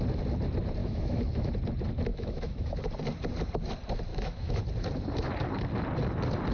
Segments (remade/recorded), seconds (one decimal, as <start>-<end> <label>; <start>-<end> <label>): 0.0-0.8 recorded; 0.8-1.5 remade; 1.5-2.1 recorded; 2.1-2.8 remade; 2.8-4.1 recorded; 4.1-4.6 remade; 4.6-6.5 recorded